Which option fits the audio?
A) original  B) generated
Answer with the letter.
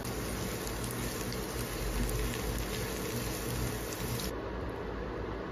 A